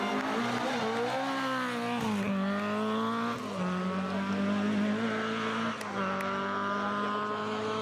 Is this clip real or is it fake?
real